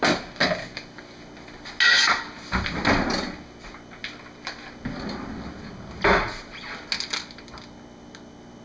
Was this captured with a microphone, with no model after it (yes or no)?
yes